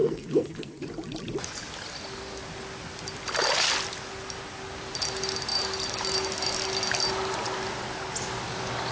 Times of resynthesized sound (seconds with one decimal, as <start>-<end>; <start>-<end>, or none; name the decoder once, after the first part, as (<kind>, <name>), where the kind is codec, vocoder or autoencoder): 0.0-0.8 (codec, SNAC)